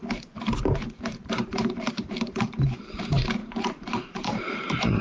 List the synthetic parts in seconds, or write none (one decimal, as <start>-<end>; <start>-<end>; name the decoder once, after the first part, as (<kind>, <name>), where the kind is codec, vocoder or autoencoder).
0.6-5.0 (vocoder, BigVGAN v2)